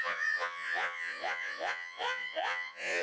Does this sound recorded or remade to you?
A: remade